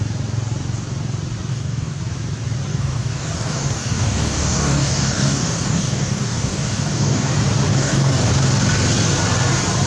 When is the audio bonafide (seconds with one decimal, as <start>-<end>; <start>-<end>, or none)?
0.0-1.5; 2.0-2.7; 7.3-7.7; 8.3-9.9